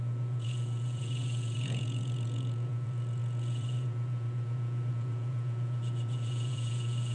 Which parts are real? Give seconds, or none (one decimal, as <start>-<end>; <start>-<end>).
none